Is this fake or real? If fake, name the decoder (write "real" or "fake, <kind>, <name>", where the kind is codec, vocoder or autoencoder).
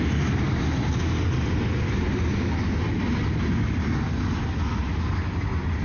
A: real